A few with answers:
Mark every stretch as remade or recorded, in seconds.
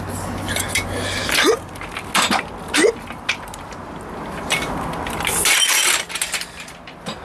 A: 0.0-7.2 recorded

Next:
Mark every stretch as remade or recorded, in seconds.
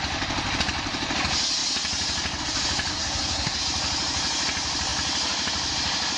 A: 0.0-2.9 recorded; 2.9-3.6 remade; 3.6-6.2 recorded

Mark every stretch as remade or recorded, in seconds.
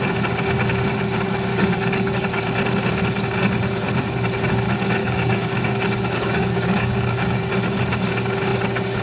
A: 0.0-1.5 recorded; 1.5-2.4 remade; 2.4-5.0 recorded; 5.0-7.5 remade; 7.5-9.0 recorded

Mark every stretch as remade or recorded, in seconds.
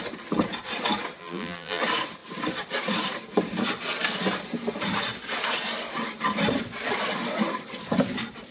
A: 0.0-1.2 recorded; 1.2-1.8 remade; 1.8-8.5 recorded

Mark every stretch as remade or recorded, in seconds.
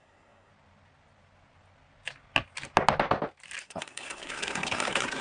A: 0.0-0.5 remade; 0.5-3.6 recorded; 3.6-5.2 remade